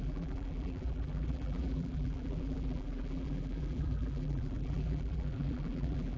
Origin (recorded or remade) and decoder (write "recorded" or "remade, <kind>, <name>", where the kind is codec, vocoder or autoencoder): remade, vocoder, BigVGAN v2